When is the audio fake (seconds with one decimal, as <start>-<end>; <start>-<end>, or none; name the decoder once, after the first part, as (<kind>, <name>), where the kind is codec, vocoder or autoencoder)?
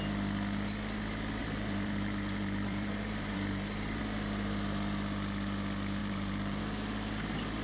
1.4-4.0 (vocoder, BigVGAN v2); 6.0-6.6